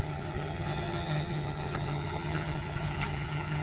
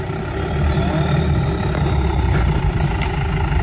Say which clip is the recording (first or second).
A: second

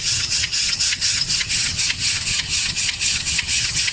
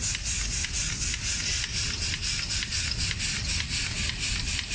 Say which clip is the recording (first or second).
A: second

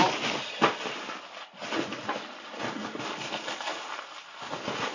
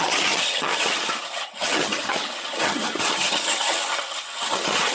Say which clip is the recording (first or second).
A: first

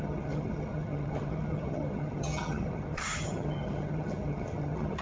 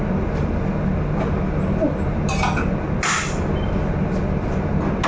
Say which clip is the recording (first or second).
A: second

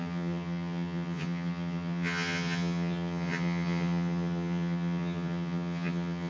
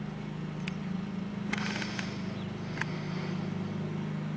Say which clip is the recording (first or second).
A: second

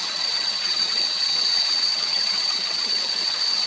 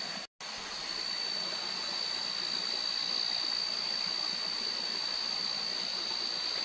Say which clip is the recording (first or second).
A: second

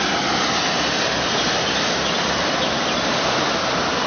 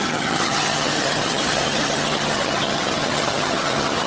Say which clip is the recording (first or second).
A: first